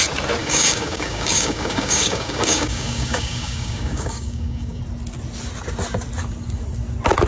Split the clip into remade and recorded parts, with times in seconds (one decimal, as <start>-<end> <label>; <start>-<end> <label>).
0.0-0.4 recorded; 0.4-4.8 remade; 4.8-7.3 recorded